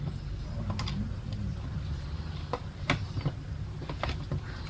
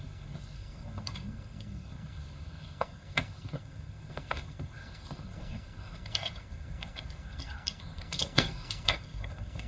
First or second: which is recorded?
first